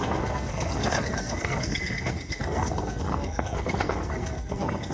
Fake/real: fake